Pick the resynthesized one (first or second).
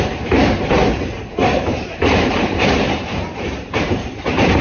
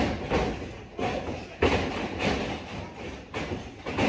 first